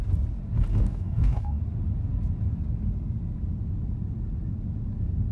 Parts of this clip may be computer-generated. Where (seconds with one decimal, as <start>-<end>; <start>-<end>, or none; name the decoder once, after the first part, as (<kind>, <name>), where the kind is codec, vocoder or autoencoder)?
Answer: 0.7-1.6 (codec, DAC)